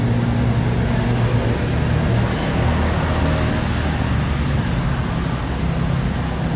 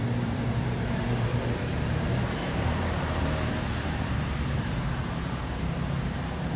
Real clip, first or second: first